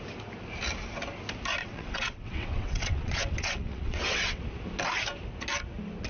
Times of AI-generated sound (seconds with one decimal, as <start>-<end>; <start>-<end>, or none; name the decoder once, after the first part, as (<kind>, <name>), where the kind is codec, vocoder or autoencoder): 1.6-4.4 (vocoder, WaveNeXt)